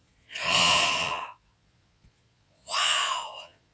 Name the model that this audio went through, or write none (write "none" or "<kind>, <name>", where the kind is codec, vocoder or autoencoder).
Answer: vocoder, Vocos